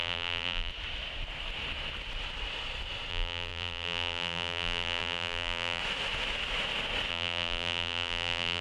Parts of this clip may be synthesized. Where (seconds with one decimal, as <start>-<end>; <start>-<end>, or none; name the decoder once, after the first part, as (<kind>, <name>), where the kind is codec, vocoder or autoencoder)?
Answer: 0.0-0.7 (vocoder, BigVGAN v2); 3.1-5.8; 7.1-8.6